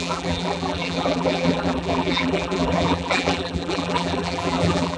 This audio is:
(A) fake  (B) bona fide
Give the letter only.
A